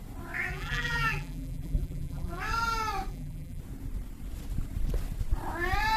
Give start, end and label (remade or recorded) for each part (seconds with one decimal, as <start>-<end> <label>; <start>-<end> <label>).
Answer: 0.0-0.5 recorded; 0.5-2.4 remade; 2.4-3.1 recorded; 3.1-3.6 remade; 3.6-6.0 recorded